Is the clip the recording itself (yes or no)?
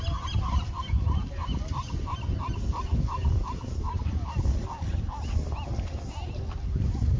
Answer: yes